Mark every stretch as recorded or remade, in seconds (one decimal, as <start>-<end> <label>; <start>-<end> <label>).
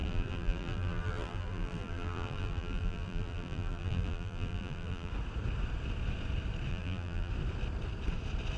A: 0.0-5.1 remade; 5.1-6.7 recorded; 6.7-7.3 remade; 7.3-8.6 recorded